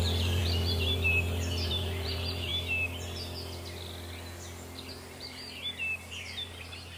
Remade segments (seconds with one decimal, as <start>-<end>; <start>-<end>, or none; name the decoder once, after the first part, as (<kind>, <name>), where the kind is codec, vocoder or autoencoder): 0.0-2.5 (vocoder, BigVGAN v2); 4.9-7.0